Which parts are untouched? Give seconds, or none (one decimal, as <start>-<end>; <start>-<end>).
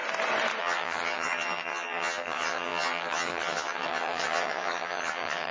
0.0-0.6